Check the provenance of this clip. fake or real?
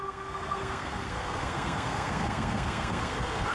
fake